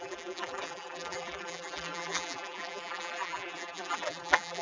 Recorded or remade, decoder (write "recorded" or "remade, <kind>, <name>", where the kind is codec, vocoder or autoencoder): remade, vocoder, BigVGAN v2